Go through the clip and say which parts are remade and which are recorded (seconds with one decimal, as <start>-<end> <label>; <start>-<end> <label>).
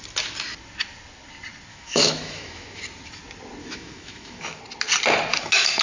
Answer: 0.0-1.7 recorded; 1.7-2.8 remade; 2.8-3.6 recorded; 3.6-4.6 remade; 4.6-5.3 recorded; 5.3-5.8 remade